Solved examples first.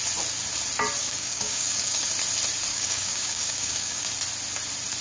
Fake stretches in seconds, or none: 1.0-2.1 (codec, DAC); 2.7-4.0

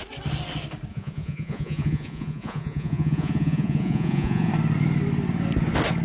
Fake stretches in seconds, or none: 0.9-4.5 (vocoder, Vocos)

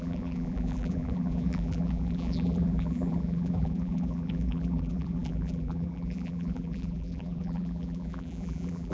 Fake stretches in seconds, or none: 0.0-8.9 (vocoder, BigVGAN v2)

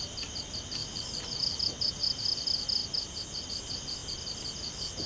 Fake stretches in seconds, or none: 0.8-1.6 (vocoder, BigVGAN v2)

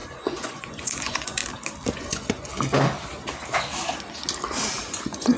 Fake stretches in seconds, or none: 0.0-1.4 (vocoder, Vocos); 1.9-2.5; 4.8-5.4

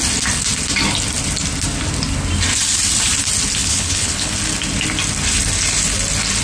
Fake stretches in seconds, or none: 3.6-4.3 (codec, HILCodec)